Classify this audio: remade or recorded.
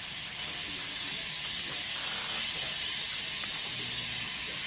recorded